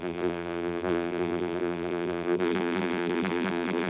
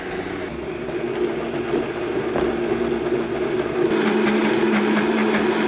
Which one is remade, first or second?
first